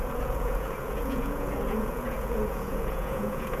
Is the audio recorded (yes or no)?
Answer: no